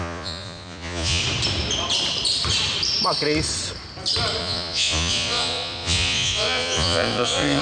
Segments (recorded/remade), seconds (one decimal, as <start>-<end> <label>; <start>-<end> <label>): 0.0-1.2 remade; 1.2-4.4 recorded; 4.4-7.6 remade